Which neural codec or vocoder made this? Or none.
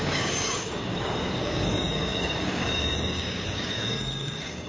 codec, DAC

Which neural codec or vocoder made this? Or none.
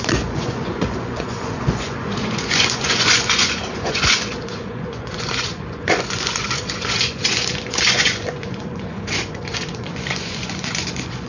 vocoder, Vocos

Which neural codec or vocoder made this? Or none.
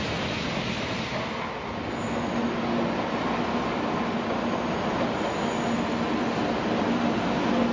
none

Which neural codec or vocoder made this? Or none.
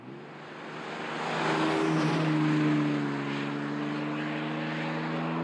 none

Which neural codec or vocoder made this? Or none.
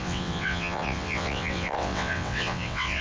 vocoder, WaveNeXt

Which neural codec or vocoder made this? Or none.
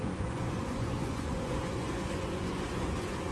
vocoder, Vocos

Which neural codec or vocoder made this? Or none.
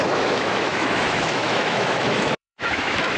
autoencoder, DAC-VAE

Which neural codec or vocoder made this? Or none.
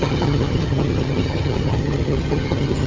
vocoder, HiFi-GAN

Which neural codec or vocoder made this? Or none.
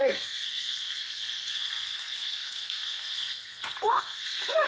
codec, SNAC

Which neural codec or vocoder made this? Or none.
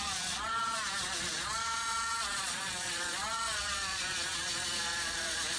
vocoder, Vocos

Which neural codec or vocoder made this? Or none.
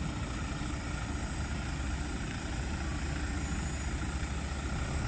none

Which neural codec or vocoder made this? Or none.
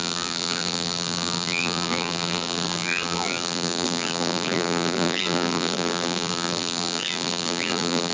vocoder, BigVGAN v2